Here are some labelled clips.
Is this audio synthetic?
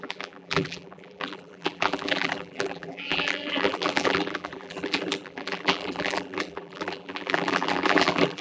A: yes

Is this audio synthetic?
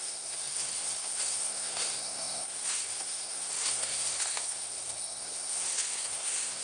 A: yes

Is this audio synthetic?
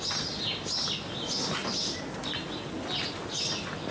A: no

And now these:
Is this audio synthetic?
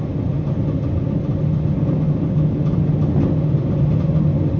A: no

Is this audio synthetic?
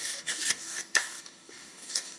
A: yes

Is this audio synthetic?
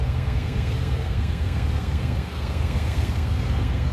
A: yes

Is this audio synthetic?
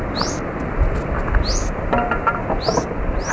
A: no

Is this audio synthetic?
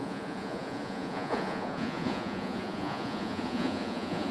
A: yes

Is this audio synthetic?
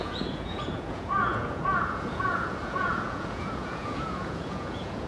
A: yes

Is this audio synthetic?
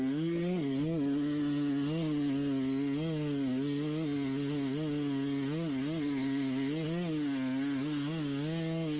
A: no